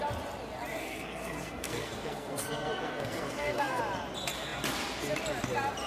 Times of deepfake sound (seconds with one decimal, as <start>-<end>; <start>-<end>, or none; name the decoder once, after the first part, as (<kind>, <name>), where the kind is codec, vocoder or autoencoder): 0.8-3.8 (codec, SNAC)

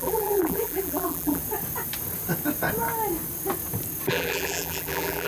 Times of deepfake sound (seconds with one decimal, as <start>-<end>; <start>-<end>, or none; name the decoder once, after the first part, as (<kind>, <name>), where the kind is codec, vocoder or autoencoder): 0.0-1.4 (vocoder, BigVGAN v2); 4.1-5.3

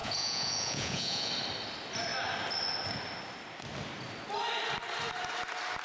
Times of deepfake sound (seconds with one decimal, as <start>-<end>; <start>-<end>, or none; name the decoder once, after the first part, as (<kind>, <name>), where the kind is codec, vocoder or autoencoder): 0.0-1.3 (vocoder, Vocos)

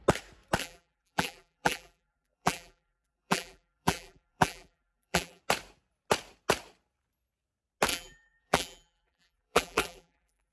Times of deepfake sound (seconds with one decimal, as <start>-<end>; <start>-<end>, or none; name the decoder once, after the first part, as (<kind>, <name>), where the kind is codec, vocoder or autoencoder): 0.6-5.4 (vocoder, BigVGAN v2); 7.9-10.5

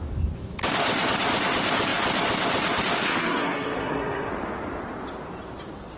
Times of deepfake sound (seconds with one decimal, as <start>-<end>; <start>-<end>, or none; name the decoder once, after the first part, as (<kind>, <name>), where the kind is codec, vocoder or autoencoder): 3.2-4.3 (codec, SNAC)

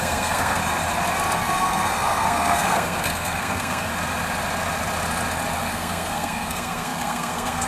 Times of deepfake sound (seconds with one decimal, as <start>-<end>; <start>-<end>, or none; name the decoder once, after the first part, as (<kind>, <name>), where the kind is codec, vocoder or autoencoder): 0.0-0.6 (codec, SNAC); 1.4-3.9; 5.7-7.7

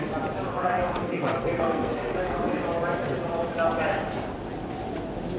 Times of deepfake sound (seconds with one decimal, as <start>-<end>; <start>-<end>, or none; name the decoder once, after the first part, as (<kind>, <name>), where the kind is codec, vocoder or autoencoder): 0.5-2.6 (codec, SNAC)

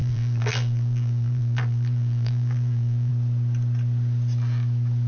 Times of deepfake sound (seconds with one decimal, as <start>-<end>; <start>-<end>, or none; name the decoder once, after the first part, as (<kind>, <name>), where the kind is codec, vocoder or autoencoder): 0.0-3.1 (vocoder, BigVGAN v2)